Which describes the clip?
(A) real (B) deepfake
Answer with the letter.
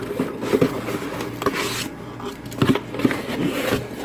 A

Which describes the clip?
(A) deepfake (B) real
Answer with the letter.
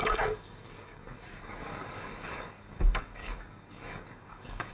A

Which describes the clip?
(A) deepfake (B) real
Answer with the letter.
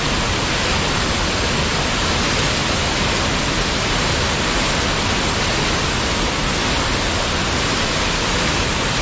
B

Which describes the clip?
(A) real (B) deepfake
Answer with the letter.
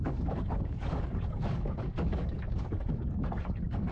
B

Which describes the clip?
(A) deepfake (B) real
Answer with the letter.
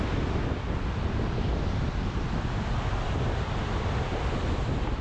B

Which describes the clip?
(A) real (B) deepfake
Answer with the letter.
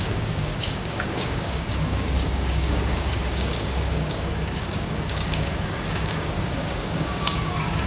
B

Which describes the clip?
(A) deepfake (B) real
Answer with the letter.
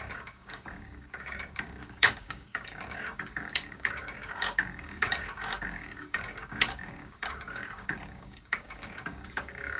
A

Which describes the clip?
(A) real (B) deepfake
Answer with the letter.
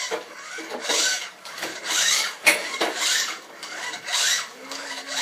B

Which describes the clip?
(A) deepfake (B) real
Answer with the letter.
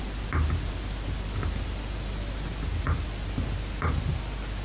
B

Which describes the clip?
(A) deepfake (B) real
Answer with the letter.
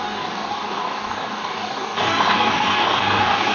A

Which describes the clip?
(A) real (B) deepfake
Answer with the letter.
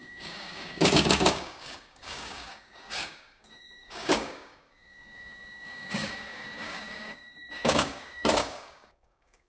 B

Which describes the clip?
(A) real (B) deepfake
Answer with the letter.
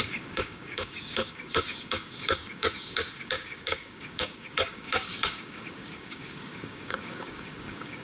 B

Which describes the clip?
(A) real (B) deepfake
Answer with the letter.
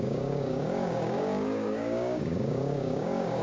B